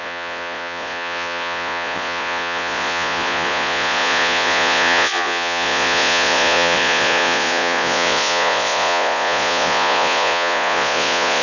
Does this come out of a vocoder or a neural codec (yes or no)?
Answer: yes